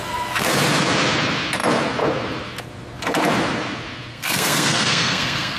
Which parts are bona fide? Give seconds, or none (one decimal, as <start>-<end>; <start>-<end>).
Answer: 0.0-4.1